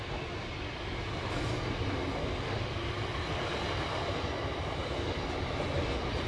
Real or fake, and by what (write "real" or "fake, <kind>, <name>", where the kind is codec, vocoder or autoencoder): real